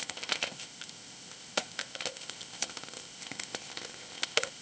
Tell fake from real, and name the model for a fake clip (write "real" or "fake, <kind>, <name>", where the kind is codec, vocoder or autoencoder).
fake, codec, ZipCodec